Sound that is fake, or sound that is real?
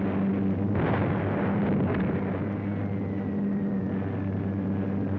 real